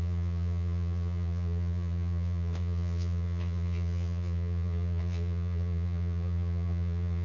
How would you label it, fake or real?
fake